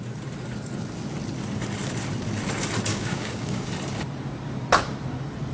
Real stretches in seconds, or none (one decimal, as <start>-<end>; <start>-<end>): 0.0-2.9; 3.7-5.5